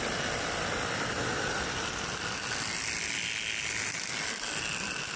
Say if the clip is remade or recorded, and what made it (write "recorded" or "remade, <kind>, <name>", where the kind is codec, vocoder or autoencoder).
recorded